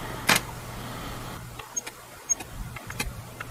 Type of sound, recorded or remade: remade